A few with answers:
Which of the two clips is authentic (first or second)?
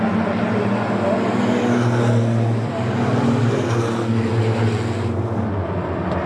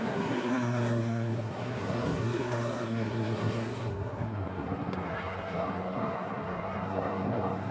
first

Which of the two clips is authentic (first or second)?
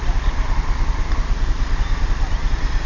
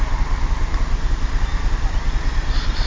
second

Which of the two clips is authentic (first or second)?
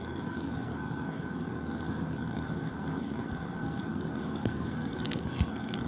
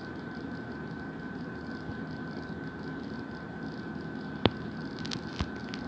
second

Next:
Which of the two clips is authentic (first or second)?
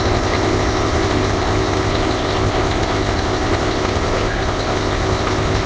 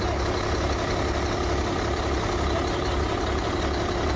second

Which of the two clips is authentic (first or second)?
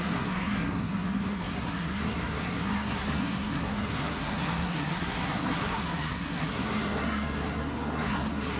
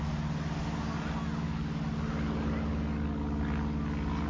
second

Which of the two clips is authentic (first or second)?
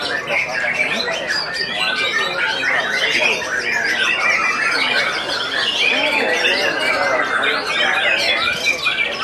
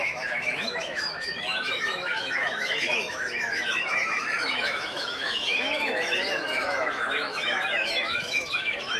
first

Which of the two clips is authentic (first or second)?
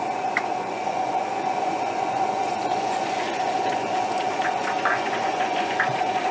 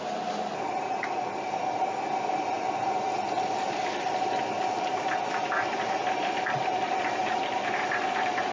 second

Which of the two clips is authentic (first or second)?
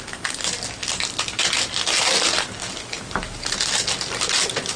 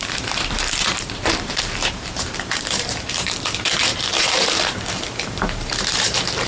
first